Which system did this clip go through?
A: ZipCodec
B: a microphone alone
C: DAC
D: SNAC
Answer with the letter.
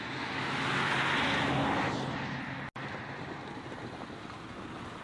B